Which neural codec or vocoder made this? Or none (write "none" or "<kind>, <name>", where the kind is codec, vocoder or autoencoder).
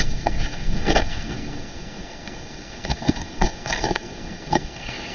codec, SNAC